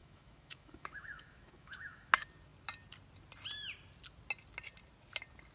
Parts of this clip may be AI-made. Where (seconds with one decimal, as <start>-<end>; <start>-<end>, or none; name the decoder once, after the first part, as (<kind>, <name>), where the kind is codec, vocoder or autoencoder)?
0.0-2.1 (autoencoder, DAC-VAE)